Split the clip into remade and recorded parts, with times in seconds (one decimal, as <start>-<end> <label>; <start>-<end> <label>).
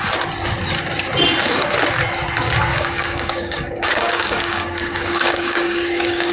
0.0-2.7 recorded; 2.7-6.3 remade